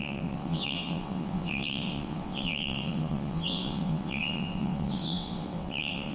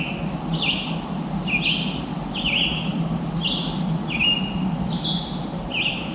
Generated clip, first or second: first